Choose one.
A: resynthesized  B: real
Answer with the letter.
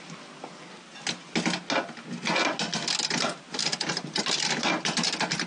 B